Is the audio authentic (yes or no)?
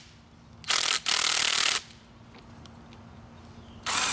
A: yes